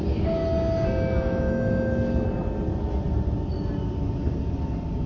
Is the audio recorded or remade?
recorded